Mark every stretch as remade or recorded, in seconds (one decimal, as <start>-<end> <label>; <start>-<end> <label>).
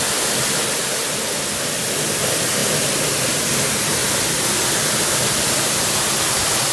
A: 0.0-2.6 recorded; 2.6-3.2 remade; 3.2-6.7 recorded